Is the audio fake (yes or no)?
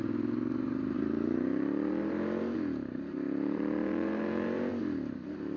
yes